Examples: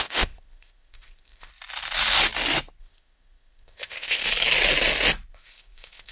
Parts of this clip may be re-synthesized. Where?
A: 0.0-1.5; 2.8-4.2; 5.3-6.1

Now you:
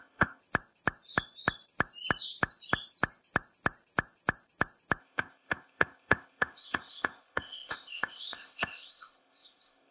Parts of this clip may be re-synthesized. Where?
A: 0.0-0.4; 5.0-9.9

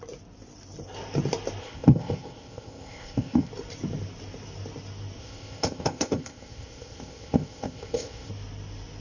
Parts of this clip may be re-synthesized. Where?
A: 1.6-3.5; 5.2-8.3

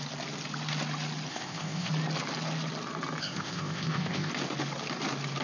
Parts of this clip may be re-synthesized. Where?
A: 1.3-1.9; 3.2-4.3

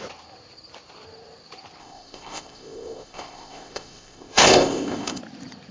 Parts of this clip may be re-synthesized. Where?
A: 1.8-5.2